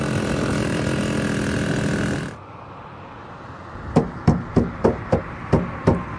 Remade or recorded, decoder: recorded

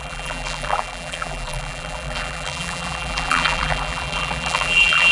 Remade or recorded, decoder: remade, vocoder, BigVGAN v2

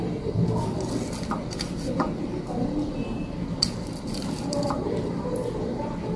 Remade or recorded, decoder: recorded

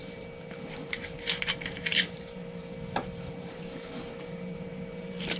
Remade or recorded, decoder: remade, vocoder, BigVGAN v2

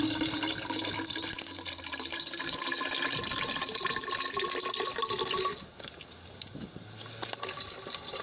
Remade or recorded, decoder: recorded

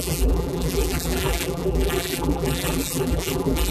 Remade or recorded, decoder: remade, vocoder, BigVGAN v2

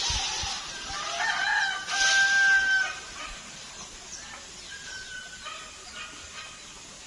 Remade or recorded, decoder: recorded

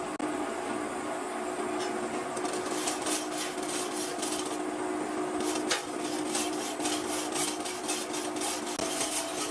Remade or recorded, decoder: recorded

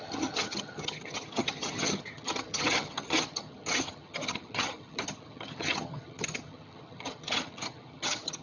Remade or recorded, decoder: remade, vocoder, HiFi-GAN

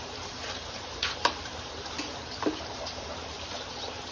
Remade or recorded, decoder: remade, vocoder, BigVGAN v2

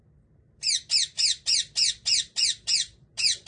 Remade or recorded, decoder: recorded